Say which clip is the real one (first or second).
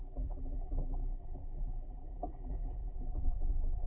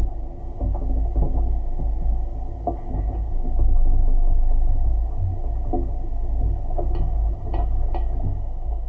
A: second